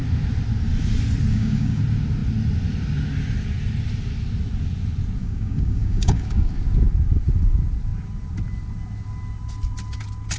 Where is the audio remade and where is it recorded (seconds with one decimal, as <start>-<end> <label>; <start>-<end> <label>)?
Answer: 0.0-1.3 recorded; 1.3-1.8 remade; 1.8-5.2 recorded; 5.2-6.5 remade; 6.5-10.4 recorded